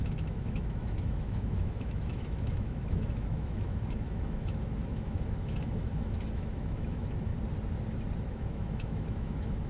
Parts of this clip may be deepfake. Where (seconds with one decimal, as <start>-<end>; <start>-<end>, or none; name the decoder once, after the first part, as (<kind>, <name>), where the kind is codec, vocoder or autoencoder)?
0.0-7.3 (autoencoder, DAC-VAE); 8.2-9.7